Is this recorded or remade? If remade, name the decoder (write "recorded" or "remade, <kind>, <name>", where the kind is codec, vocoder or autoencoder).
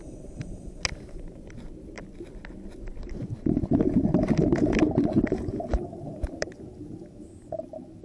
recorded